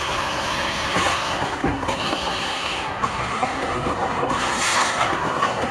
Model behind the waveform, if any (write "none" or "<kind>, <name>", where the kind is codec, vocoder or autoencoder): codec, SNAC